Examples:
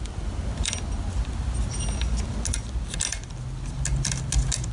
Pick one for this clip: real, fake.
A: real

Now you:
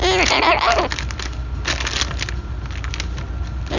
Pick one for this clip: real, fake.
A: real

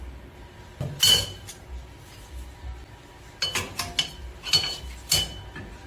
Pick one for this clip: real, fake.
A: real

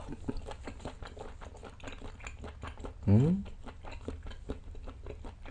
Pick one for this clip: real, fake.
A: real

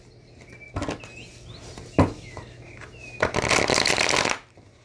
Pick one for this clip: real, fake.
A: real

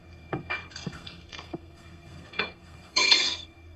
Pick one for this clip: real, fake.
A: fake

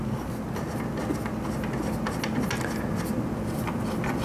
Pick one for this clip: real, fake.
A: real